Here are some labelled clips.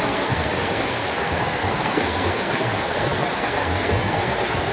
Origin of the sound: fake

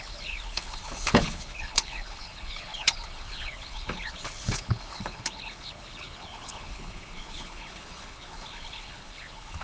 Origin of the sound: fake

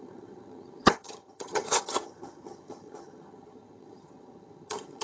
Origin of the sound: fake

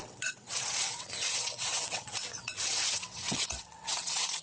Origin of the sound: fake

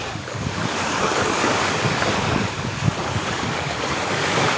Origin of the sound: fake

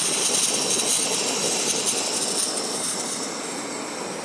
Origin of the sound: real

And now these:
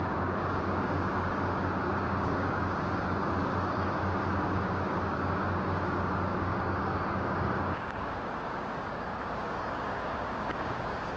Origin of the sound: fake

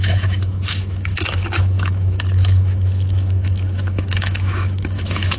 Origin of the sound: fake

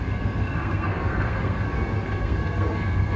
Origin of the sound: fake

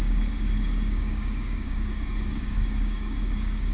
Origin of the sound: fake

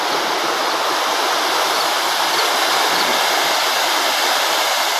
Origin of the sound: real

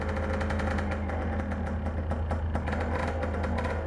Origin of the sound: real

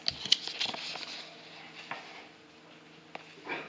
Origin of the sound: real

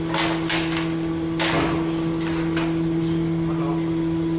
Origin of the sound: real